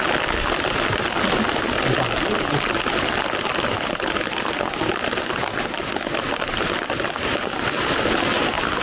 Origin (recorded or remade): recorded